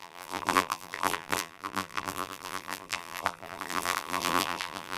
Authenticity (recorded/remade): remade